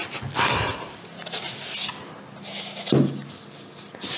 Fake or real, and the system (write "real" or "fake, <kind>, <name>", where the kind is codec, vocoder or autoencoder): real